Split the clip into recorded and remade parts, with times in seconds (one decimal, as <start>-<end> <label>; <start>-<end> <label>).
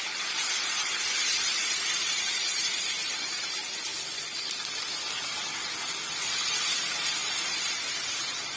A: 0.0-3.9 remade; 3.9-6.5 recorded; 6.5-8.6 remade